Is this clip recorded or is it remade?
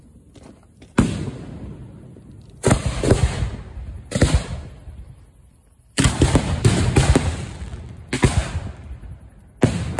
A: recorded